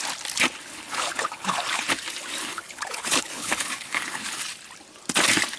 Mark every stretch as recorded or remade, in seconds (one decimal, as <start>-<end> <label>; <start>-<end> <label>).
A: 0.0-0.7 recorded; 0.7-1.9 remade; 1.9-2.4 recorded; 2.4-4.4 remade; 4.4-5.6 recorded